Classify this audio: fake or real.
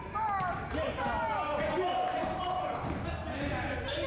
real